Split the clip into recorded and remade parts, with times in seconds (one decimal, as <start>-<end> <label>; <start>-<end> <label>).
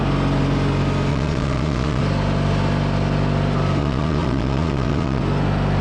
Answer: 0.0-1.1 recorded; 1.1-2.0 remade; 2.0-3.8 recorded; 3.8-5.2 remade; 5.2-5.8 recorded